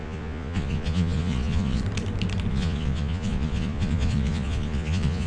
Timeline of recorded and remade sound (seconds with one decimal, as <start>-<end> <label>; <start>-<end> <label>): 0.0-1.8 remade; 1.8-2.5 recorded; 2.5-5.3 remade